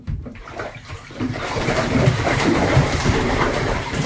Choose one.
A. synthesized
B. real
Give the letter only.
A